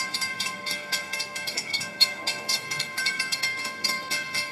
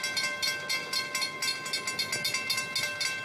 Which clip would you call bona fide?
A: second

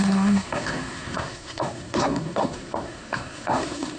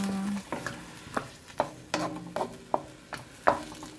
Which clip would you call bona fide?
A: second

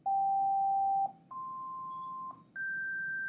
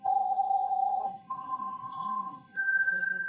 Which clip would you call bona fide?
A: first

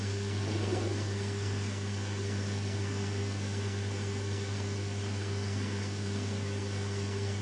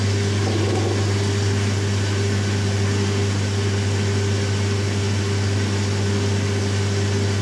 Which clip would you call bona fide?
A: second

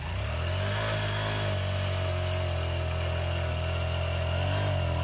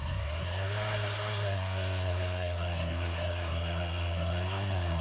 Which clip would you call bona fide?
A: first